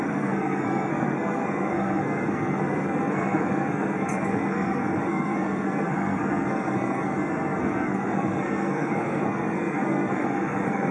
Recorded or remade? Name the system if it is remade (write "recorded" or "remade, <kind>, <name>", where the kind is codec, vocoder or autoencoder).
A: remade, codec, SNAC